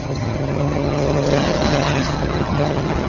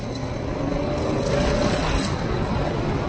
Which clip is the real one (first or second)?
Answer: second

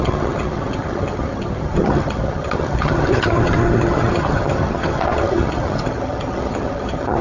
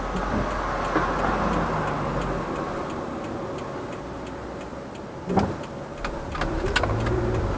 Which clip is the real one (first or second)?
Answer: second